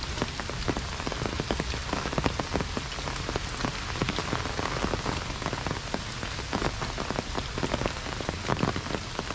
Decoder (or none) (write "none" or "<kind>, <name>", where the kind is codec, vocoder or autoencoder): none